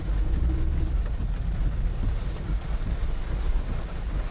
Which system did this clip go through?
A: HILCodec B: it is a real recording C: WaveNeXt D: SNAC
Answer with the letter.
B